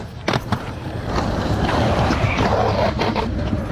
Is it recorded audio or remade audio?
remade